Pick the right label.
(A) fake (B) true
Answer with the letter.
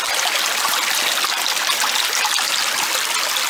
B